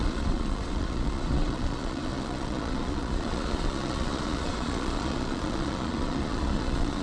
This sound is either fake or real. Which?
fake